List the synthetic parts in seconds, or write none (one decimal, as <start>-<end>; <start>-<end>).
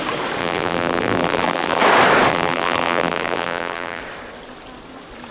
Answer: 0.4-1.8; 2.3-4.0